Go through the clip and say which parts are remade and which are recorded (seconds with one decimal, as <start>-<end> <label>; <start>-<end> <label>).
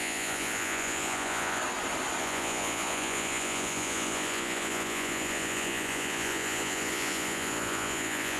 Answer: 0.0-1.6 remade; 1.6-2.2 recorded; 2.2-8.4 remade